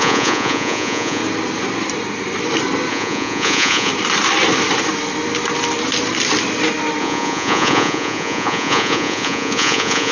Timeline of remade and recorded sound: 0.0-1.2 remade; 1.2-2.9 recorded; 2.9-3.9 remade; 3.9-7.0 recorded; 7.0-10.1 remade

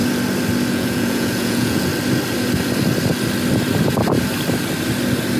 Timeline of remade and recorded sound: 0.0-0.7 recorded; 0.7-1.9 remade; 1.9-5.4 recorded